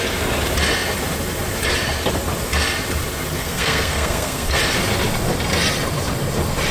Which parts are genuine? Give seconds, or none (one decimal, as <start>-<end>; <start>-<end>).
0.0-3.4; 4.6-6.7